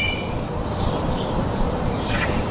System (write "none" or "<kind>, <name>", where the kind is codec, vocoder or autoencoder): vocoder, BigVGAN v2